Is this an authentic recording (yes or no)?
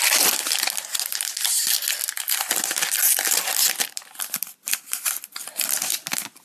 yes